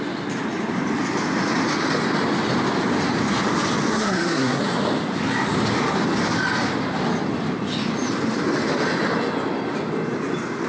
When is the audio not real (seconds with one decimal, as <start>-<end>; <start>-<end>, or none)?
3.9-4.6